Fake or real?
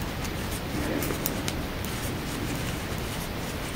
real